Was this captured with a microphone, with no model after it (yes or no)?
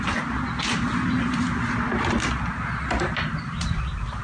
yes